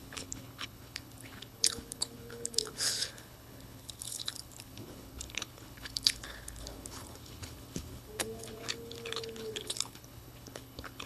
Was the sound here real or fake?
fake